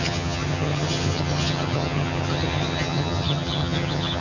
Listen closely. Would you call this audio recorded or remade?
remade